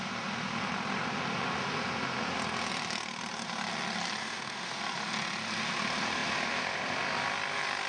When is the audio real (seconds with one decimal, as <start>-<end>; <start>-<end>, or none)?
0.0-4.2; 4.8-7.9